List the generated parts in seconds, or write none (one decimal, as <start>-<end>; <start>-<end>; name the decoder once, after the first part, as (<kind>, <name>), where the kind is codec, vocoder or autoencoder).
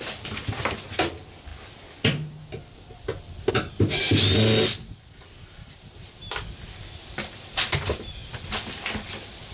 none